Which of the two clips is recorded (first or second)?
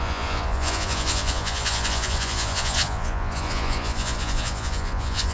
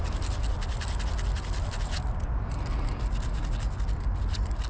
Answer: second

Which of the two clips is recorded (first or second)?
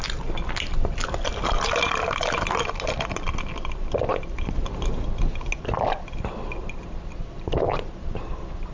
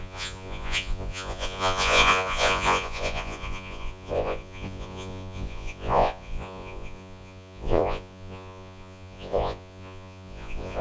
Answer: first